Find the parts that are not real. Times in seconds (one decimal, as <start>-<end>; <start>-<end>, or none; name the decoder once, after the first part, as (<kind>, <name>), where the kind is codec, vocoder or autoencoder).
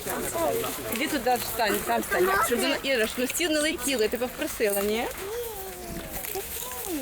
0.0-1.2 (autoencoder, DAC-VAE); 4.4-5.8; 6.4-7.0